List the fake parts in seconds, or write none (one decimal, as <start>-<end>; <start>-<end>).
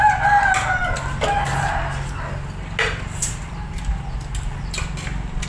none